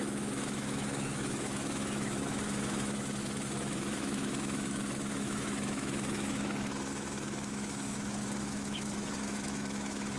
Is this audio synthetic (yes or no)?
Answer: yes